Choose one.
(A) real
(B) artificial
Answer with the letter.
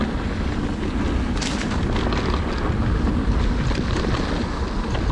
A